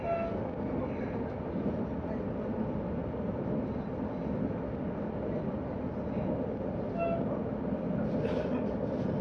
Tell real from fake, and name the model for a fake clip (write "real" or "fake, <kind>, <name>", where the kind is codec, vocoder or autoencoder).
real